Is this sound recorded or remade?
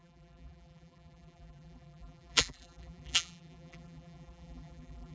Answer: remade